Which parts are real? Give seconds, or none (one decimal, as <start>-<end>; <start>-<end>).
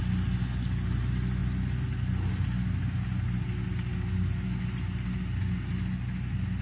0.0-6.6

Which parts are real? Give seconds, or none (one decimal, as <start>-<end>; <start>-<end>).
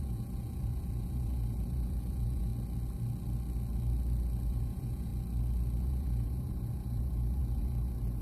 2.5-4.5; 5.1-5.8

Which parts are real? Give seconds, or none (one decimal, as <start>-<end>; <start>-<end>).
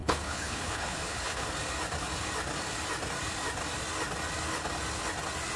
1.5-5.6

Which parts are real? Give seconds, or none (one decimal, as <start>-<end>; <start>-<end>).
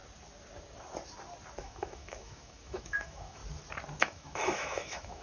0.0-1.6; 3.4-4.0